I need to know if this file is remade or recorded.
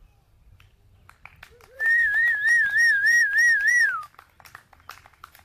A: remade